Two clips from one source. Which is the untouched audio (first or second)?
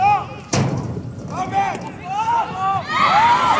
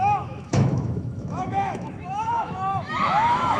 first